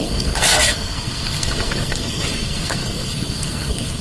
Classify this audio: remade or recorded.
remade